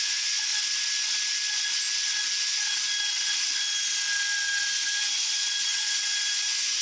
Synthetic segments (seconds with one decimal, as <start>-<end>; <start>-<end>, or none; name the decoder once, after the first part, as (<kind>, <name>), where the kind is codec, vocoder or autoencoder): 0.0-0.5 (vocoder, Vocos); 4.6-6.8